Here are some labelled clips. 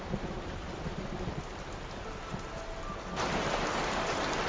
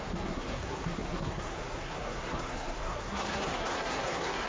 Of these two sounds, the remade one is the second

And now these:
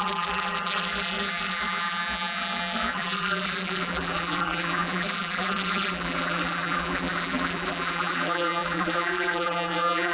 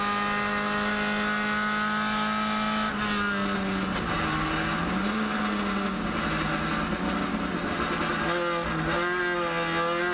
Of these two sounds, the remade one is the first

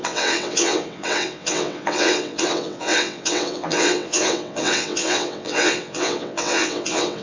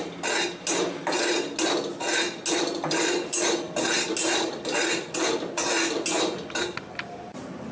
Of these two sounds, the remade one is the first